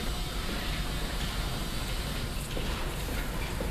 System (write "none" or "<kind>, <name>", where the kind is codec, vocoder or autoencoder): none